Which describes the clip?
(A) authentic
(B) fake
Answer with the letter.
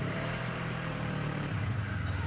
B